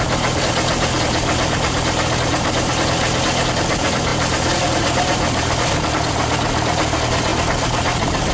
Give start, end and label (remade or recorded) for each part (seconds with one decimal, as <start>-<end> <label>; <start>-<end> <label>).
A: 0.0-4.1 recorded; 4.1-5.7 remade; 5.7-8.3 recorded